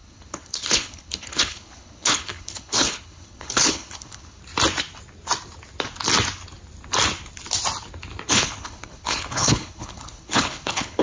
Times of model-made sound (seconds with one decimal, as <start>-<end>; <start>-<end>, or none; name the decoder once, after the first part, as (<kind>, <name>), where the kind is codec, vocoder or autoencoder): 0.0-4.4 (codec, HILCodec); 8.3-11.0